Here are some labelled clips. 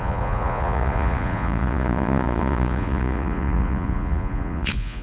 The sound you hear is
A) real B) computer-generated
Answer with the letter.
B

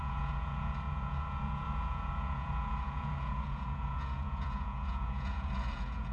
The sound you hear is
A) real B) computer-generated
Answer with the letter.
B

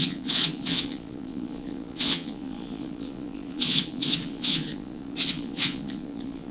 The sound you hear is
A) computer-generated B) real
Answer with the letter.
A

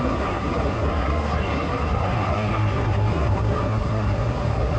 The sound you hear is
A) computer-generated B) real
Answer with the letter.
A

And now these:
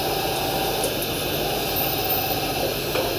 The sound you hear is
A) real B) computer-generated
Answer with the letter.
A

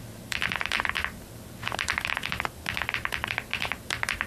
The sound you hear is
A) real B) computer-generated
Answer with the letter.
A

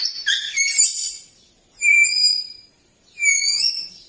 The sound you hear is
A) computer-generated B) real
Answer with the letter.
B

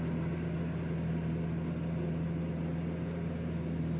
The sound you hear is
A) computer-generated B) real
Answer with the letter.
B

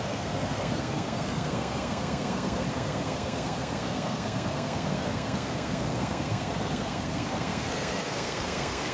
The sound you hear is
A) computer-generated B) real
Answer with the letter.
A